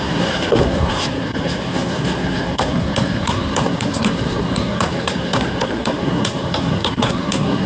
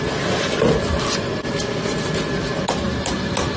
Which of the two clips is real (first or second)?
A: second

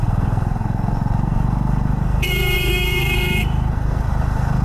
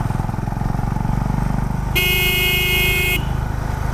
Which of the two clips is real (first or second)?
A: second